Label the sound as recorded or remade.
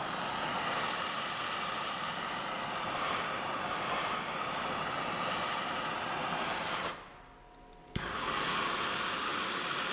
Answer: recorded